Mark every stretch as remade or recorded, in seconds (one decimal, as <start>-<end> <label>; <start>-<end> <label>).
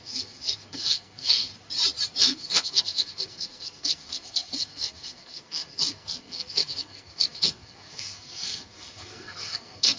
0.0-1.5 remade; 1.5-2.2 recorded; 2.2-10.0 remade